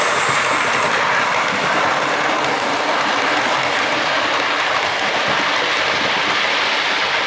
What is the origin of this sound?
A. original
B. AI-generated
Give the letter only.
A